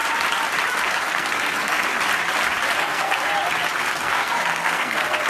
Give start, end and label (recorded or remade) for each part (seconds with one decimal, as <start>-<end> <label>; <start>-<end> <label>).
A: 0.0-0.8 recorded; 0.8-1.9 remade; 1.9-2.8 recorded; 2.8-3.3 remade; 3.3-3.8 recorded; 3.8-5.3 remade